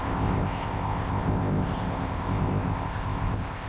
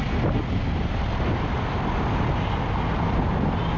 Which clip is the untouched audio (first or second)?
second